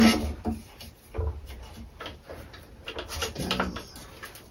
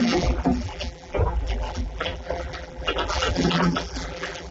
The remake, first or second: second